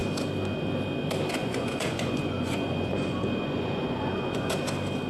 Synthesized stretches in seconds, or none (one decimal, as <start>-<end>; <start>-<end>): 1.4-4.5